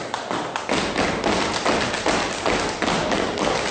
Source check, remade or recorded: recorded